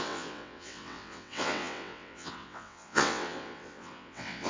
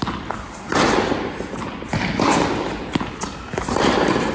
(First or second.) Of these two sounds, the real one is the second